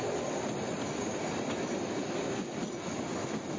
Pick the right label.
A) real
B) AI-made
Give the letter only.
A